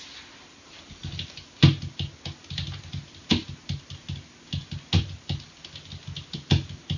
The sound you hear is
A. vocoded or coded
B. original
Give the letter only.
B